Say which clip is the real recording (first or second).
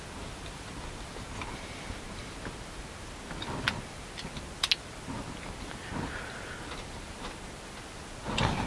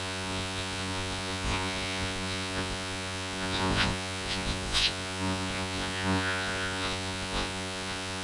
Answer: first